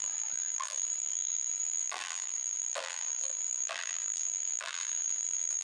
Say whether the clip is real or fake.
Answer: fake